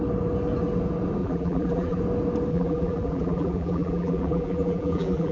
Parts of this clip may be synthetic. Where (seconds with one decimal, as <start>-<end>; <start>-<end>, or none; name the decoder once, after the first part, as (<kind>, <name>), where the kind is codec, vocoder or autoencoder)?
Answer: 1.2-2.0 (vocoder, BigVGAN v2); 2.5-5.3